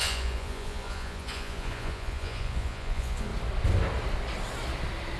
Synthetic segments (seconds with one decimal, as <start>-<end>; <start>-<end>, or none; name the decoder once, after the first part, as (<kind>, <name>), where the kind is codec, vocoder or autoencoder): 0.0-3.3 (vocoder, Vocos)